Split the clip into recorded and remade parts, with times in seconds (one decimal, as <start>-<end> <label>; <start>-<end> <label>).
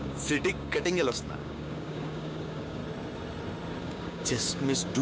0.0-2.8 remade; 2.8-3.8 recorded; 3.8-5.0 remade